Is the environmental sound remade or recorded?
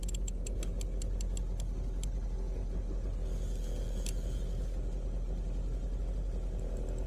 recorded